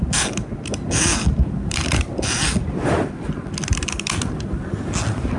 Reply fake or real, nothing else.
real